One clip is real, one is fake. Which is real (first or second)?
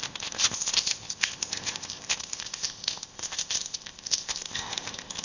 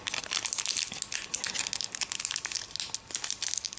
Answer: second